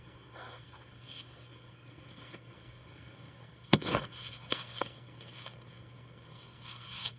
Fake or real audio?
fake